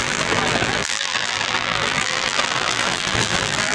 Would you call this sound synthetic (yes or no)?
yes